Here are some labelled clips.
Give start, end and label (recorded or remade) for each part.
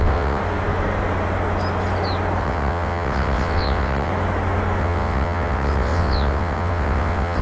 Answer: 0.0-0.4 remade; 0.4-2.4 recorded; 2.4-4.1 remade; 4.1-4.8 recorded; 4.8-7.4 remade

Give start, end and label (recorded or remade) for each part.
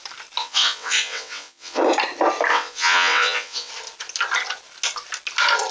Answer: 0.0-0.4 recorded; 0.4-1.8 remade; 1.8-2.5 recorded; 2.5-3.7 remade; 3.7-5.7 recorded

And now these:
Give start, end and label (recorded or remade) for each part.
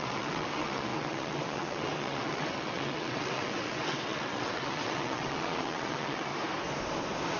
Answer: 0.0-6.3 remade; 6.3-7.4 recorded